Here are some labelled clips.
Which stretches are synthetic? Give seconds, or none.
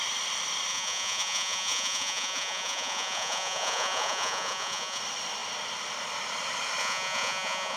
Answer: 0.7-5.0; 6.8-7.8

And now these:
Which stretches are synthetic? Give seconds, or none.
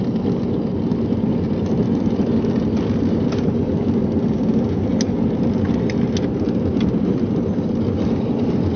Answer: none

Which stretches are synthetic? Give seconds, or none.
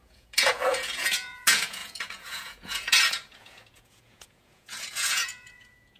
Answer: 0.0-6.0